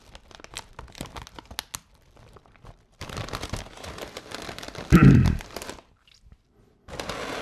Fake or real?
real